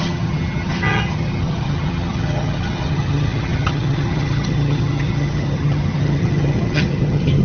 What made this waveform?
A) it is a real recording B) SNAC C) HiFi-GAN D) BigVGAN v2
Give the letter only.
C